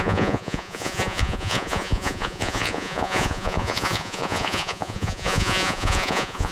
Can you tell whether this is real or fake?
fake